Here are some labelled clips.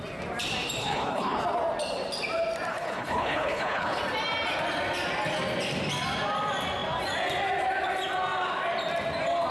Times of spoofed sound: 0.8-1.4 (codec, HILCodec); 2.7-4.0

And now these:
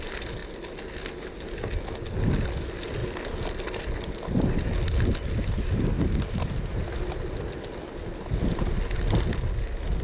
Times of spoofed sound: none

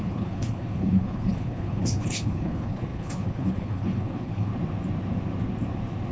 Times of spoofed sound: 0.0-4.5 (codec, HILCodec)

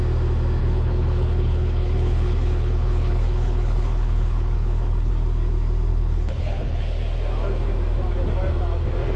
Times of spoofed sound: 0.6-5.1 (codec, HILCodec); 5.9-6.8

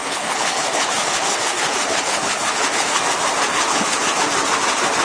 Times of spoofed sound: 0.0-3.0 (codec, HILCodec); 3.5-4.2

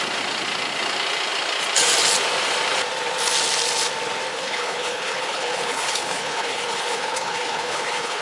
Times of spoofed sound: 4.3-8.2 (codec, HILCodec)

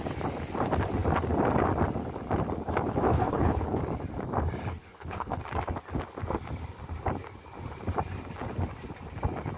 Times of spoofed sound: 3.1-3.8 (codec, HILCodec); 4.7-5.4